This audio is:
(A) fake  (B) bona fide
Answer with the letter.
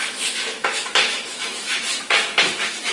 A